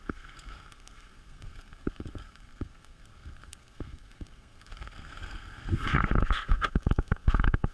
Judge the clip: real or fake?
fake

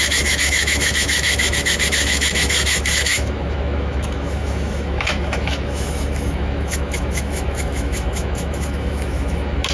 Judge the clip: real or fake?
fake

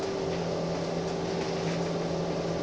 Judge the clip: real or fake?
real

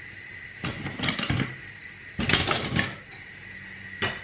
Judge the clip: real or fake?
real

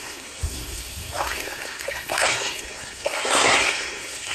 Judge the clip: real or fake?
fake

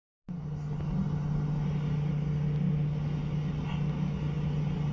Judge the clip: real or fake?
real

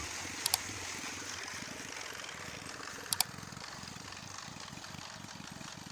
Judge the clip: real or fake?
real